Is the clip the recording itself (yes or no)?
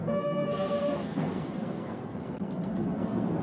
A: no